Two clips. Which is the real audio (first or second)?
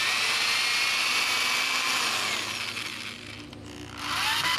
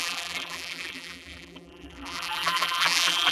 first